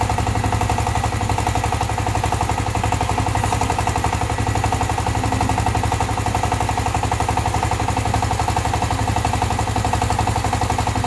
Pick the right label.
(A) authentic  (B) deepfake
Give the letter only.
A